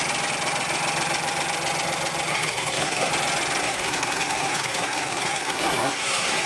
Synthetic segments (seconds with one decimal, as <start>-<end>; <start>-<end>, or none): 2.3-3.1; 3.6-6.5